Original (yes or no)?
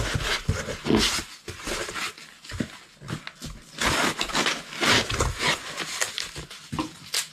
yes